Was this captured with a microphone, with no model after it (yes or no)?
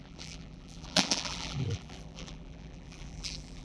no